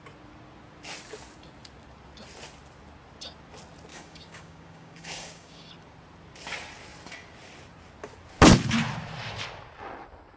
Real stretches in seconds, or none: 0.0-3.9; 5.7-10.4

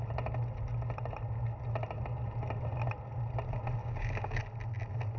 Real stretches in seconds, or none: 0.0-3.8; 4.4-5.2

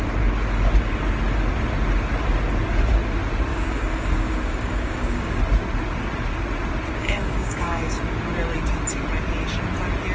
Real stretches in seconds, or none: 0.0-3.5; 5.4-7.0; 8.0-10.1

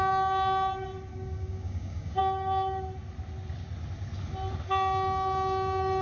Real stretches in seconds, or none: 0.0-1.1; 2.2-6.0

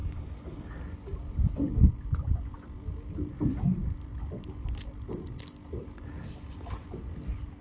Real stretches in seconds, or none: 0.7-7.6